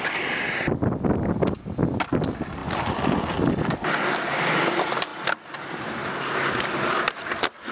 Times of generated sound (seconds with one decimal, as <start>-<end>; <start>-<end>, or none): none